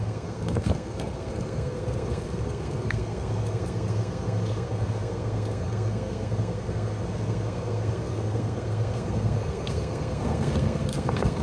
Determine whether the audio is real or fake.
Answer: fake